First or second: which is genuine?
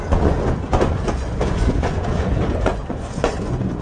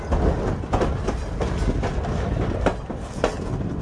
second